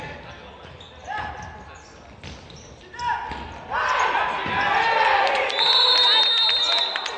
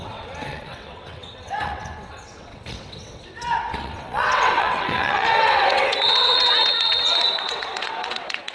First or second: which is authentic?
first